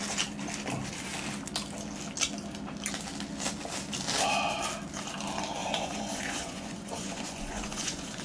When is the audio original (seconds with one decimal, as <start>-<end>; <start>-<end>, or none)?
0.0-5.6